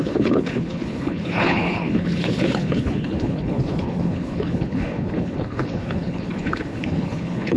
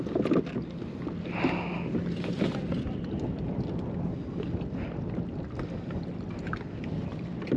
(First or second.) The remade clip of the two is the first